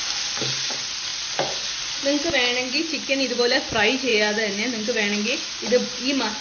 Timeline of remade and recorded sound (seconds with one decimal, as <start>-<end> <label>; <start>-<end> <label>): 0.0-6.4 recorded